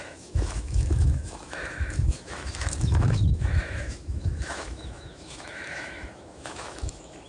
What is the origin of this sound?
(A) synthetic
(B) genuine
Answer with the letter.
A